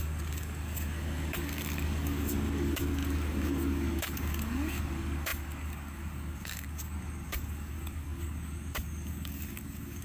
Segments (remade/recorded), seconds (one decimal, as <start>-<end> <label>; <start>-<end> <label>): 0.0-10.0 remade